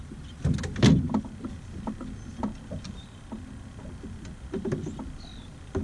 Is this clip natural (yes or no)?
yes